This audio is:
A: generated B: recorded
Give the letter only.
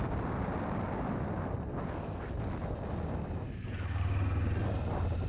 B